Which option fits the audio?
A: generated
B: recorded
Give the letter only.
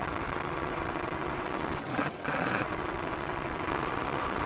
A